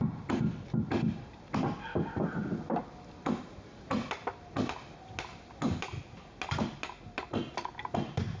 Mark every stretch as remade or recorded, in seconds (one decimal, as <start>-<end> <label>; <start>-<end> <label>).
0.0-8.4 recorded